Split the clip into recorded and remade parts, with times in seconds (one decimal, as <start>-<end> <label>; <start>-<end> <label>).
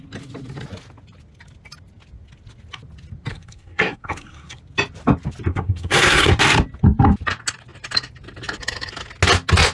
0.0-3.3 recorded; 3.3-4.6 remade; 4.6-5.5 recorded; 5.5-6.4 remade; 6.4-9.7 recorded